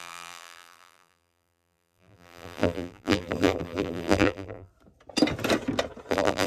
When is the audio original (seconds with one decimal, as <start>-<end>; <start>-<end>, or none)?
4.7-6.1